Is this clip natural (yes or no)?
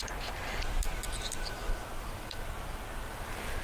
yes